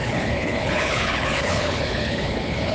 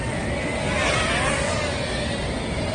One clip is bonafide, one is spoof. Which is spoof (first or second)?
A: first